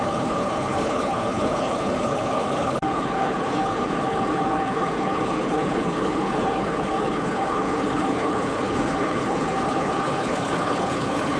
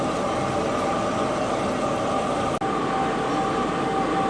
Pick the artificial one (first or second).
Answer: first